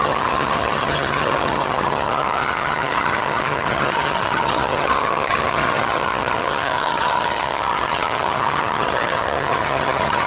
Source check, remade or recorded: remade